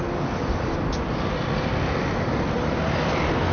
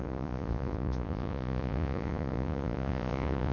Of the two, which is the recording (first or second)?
first